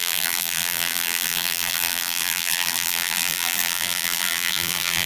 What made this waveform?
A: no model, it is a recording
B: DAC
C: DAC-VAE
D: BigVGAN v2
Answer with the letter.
D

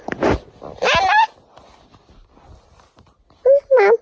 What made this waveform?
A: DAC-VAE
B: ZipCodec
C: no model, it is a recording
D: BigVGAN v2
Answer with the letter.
C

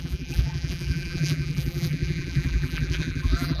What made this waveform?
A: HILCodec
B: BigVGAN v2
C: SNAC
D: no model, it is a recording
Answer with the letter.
B